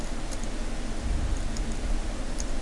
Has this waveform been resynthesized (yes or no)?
no